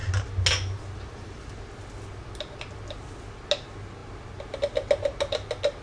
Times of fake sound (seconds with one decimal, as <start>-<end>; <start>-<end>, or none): none